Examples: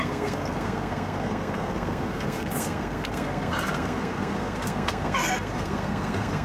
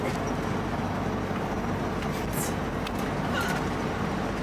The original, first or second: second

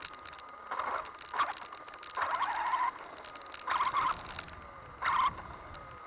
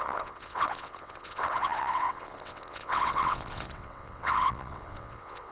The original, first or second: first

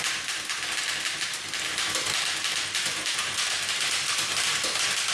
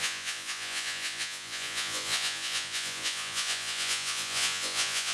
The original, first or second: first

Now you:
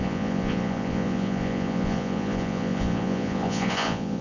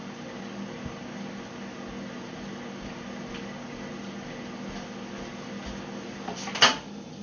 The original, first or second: second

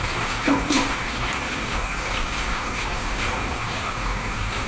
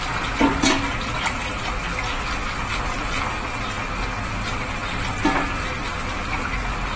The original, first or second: second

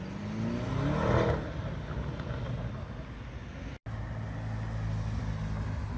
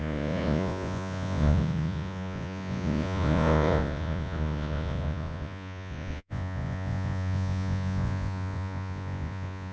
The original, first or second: first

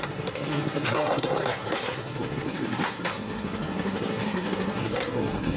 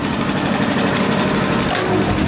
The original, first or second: second